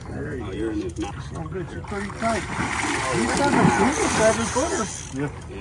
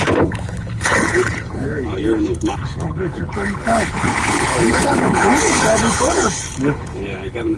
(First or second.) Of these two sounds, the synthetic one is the second